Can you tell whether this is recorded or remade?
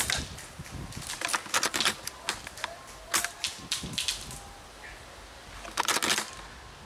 recorded